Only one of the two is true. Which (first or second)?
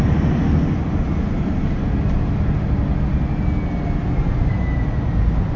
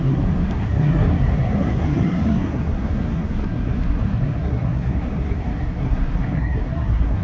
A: first